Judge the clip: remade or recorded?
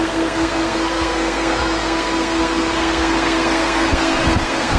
remade